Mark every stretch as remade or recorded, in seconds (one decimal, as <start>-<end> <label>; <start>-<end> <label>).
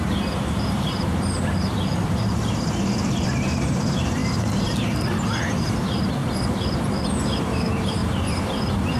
0.0-4.2 remade; 4.2-5.6 recorded; 5.6-6.2 remade; 6.2-7.4 recorded; 7.4-8.0 remade; 8.0-9.0 recorded